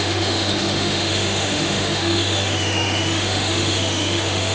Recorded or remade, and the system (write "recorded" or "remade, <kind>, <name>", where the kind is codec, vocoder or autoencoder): remade, autoencoder, DAC-VAE